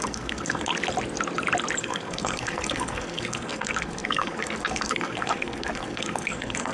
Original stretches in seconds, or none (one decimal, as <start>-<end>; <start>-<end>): 0.7-1.8